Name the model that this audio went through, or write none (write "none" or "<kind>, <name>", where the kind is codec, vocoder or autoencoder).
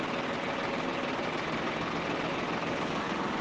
none